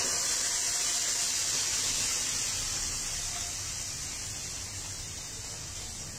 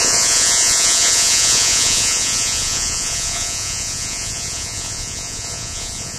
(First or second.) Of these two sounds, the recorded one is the first